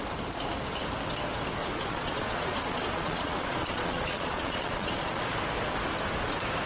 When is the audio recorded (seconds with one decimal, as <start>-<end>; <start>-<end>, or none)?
0.0-1.6; 5.3-6.7